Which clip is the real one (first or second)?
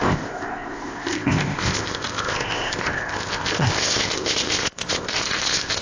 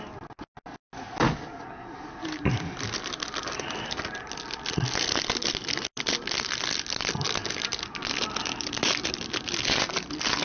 second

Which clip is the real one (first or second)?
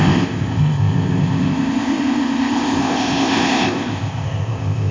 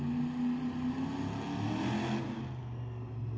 second